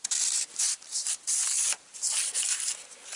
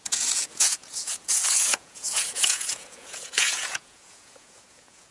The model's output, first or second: second